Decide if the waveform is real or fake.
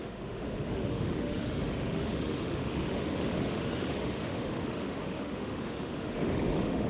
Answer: fake